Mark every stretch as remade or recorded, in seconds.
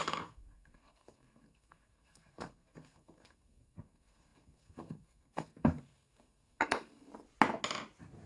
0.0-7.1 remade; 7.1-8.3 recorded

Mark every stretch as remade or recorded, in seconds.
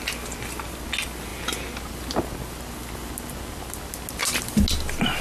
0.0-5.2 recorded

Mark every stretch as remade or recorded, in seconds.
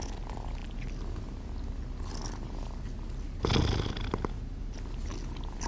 0.0-5.7 recorded